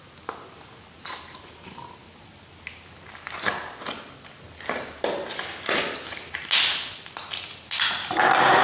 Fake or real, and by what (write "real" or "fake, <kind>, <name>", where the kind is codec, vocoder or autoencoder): real